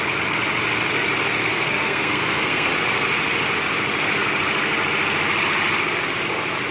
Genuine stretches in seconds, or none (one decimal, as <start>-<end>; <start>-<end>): 0.0-1.4; 2.7-6.7